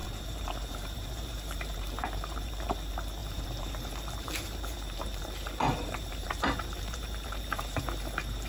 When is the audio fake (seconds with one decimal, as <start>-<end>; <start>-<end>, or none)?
0.0-2.7; 3.2-7.8